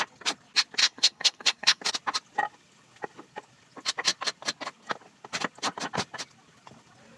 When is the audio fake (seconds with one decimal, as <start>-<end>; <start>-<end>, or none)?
0.8-1.8